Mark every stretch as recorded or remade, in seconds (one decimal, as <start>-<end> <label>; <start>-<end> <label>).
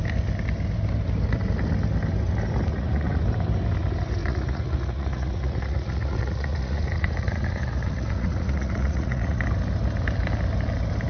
0.0-2.7 recorded; 2.7-3.2 remade; 3.2-4.2 recorded; 4.2-9.4 remade; 9.4-11.1 recorded